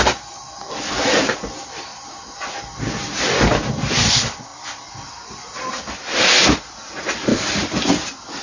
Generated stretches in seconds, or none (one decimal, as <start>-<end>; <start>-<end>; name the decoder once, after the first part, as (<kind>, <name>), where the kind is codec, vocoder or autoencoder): 1.9-2.5 (vocoder, BigVGAN v2); 4.5-5.8; 7.3-8.4